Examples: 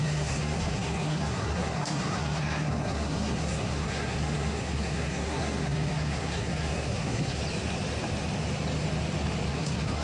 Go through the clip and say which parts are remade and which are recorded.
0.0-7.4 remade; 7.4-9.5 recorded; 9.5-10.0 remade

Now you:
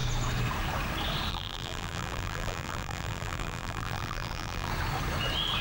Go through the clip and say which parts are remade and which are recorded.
0.0-1.3 recorded; 1.3-4.7 remade; 4.7-5.6 recorded

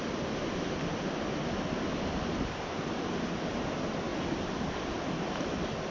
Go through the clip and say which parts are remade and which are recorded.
0.0-5.9 recorded